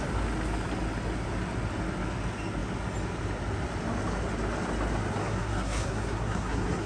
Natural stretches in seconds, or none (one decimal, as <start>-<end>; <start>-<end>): 0.0-5.2